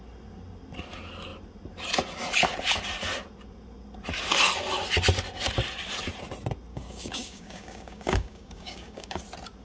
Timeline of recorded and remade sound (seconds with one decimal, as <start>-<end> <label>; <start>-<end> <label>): 0.0-6.7 recorded; 6.7-9.2 remade; 9.2-9.6 recorded